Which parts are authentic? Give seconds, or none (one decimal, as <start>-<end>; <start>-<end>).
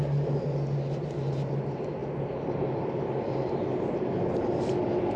0.0-5.2